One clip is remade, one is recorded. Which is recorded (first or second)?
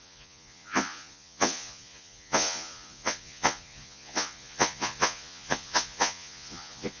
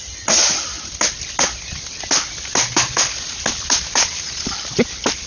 second